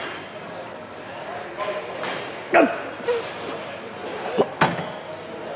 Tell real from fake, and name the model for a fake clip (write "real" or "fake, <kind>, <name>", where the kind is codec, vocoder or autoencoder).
real